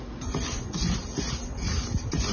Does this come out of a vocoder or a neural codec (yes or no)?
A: no